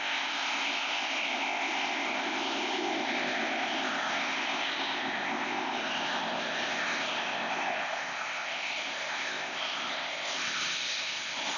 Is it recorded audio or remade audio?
remade